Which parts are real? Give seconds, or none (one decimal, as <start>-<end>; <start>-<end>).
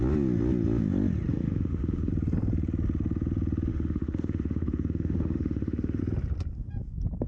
0.0-1.3; 2.1-3.7; 6.0-7.3